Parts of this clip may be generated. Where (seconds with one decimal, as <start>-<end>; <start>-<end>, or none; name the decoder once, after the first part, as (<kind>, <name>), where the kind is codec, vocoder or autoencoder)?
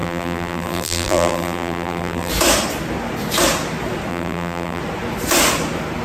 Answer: 0.0-2.3 (vocoder, BigVGAN v2); 4.1-4.8